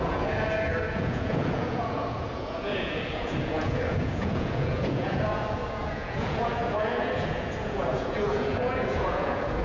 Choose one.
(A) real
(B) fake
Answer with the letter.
B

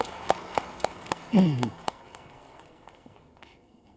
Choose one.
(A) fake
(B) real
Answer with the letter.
A